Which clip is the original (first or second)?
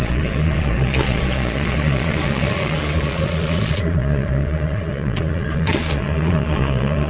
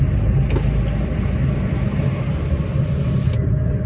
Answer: second